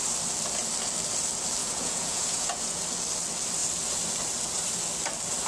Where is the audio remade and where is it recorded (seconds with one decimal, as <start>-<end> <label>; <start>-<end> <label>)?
0.0-1.6 recorded; 1.6-2.8 remade; 2.8-5.5 recorded